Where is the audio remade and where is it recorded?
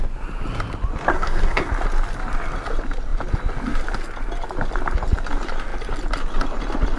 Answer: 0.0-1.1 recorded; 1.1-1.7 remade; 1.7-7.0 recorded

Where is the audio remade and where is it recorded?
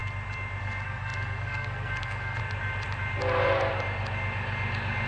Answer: 0.0-0.6 recorded; 0.6-2.4 remade; 2.4-5.1 recorded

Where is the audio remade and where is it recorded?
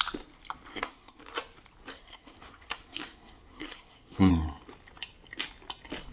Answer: 0.0-0.7 recorded; 0.7-1.2 remade; 1.2-1.9 recorded; 1.9-4.3 remade; 4.3-6.1 recorded